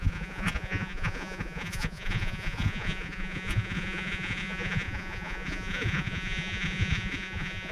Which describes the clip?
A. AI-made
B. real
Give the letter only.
A